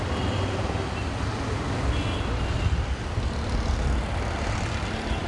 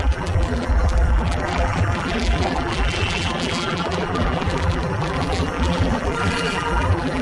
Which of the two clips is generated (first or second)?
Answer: second